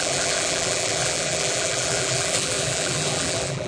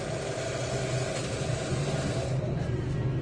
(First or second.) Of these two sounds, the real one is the second